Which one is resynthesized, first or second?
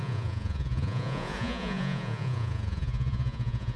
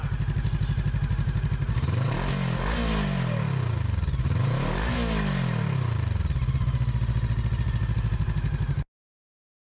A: first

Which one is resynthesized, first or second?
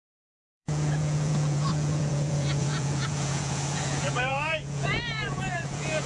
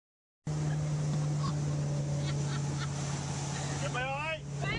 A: first